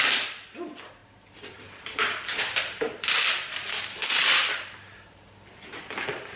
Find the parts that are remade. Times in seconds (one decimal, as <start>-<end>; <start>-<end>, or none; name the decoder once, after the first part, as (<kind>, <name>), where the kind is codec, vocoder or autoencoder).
0.0-6.4 (vocoder, BigVGAN v2)